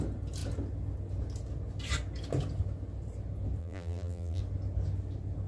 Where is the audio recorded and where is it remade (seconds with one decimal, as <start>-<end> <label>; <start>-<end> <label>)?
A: 0.0-3.6 recorded; 3.6-4.4 remade; 4.4-5.5 recorded